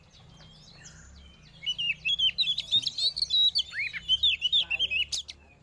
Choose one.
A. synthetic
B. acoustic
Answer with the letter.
B